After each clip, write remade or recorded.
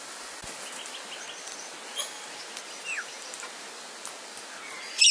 recorded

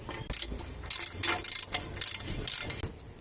recorded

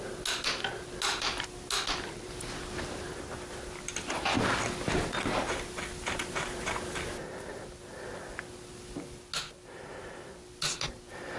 recorded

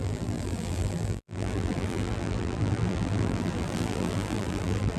remade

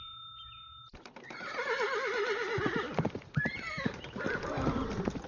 recorded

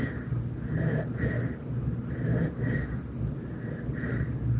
recorded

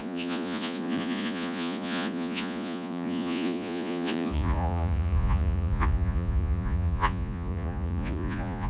remade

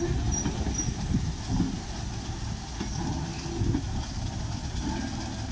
recorded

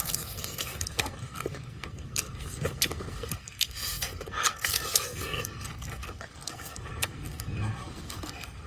remade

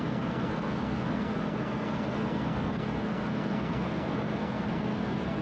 remade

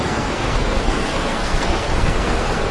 remade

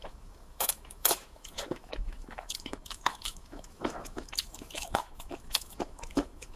remade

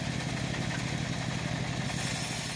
recorded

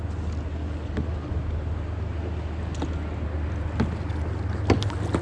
recorded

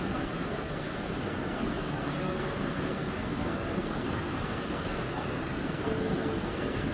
remade